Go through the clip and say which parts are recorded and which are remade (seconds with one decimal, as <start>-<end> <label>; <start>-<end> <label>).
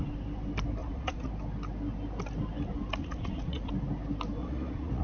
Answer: 0.0-0.8 recorded; 0.8-1.3 remade; 1.3-3.0 recorded; 3.0-3.7 remade; 3.7-4.4 recorded; 4.4-5.0 remade